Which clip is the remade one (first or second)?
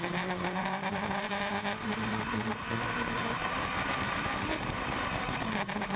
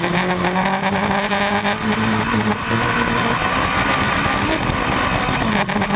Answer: first